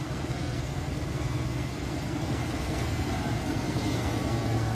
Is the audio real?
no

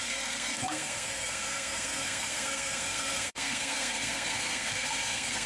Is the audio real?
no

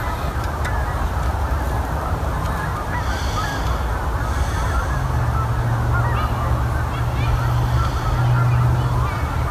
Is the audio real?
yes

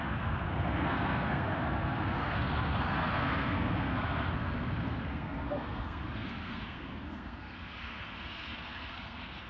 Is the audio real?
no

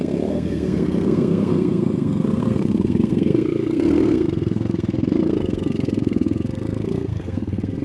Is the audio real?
no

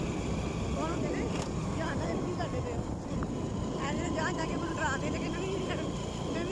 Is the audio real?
yes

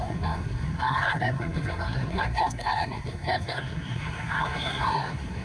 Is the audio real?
no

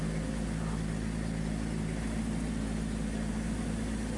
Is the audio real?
yes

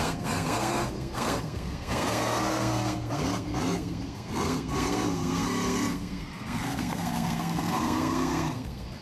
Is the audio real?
no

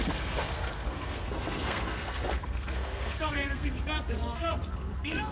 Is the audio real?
no